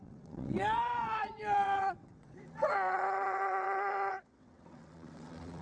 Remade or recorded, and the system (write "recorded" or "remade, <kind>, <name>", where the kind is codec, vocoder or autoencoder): remade, vocoder, WaveNeXt